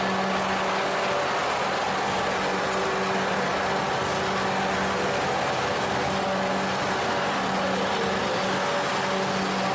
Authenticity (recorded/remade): recorded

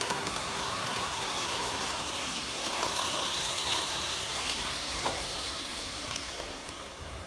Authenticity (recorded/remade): remade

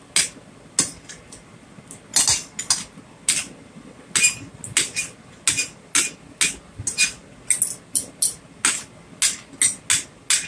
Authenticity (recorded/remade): recorded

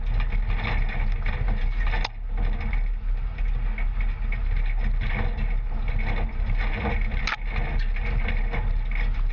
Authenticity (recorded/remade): recorded